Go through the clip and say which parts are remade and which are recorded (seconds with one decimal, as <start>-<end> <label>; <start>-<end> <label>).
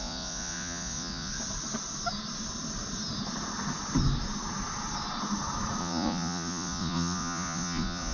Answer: 0.0-1.3 remade; 1.3-5.8 recorded; 5.8-8.1 remade